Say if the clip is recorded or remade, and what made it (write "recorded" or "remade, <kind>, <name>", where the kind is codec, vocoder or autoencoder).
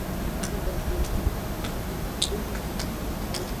recorded